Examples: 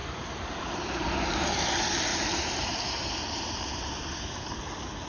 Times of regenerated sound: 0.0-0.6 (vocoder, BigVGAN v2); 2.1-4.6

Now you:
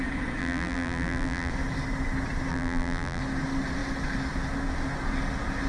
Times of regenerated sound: 0.4-1.5 (vocoder, BigVGAN v2); 2.5-3.2

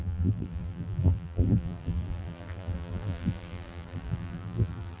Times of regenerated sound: 0.0-5.0 (vocoder, BigVGAN v2)